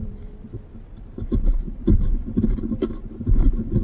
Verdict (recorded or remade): recorded